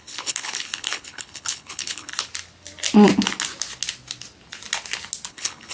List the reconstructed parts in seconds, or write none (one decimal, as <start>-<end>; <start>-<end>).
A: 0.0-2.1; 5.3-5.7